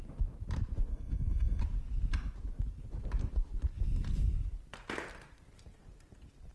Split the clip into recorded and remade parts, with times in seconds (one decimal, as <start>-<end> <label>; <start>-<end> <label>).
0.0-0.9 recorded; 0.9-1.6 remade; 1.6-6.5 recorded